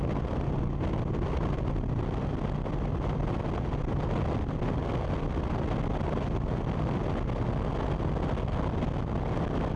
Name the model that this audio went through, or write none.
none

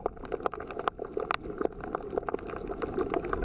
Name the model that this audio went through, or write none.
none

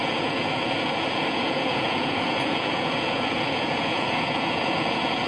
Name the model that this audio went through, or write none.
vocoder, Vocos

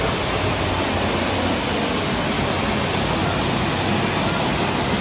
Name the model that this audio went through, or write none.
none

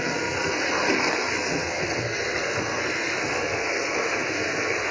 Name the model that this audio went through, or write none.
codec, SNAC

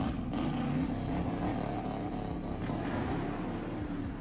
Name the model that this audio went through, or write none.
none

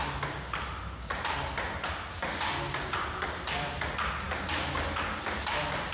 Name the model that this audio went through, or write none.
none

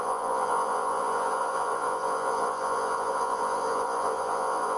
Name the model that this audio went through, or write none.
vocoder, Vocos